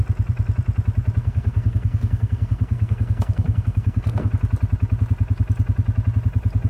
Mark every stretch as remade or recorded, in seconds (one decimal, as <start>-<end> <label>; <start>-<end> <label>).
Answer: 0.0-1.2 recorded; 1.2-4.3 remade; 4.3-6.7 recorded